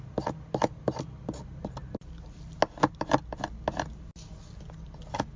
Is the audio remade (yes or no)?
no